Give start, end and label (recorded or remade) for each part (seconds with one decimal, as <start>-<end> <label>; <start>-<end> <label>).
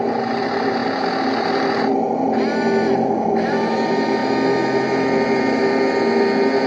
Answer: 0.0-6.7 recorded